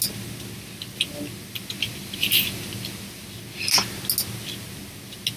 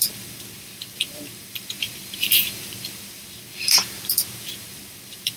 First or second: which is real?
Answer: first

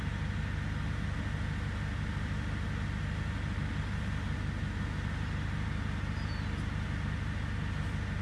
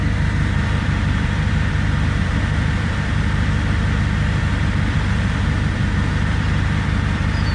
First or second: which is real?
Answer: first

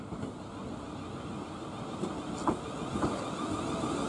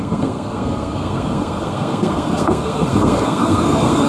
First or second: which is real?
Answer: first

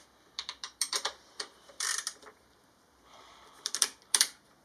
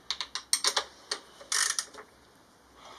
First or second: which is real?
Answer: second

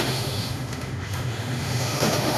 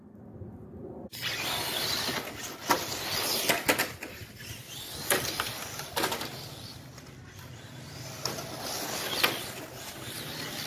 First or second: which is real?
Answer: second